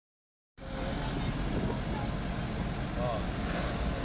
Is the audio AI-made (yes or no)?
no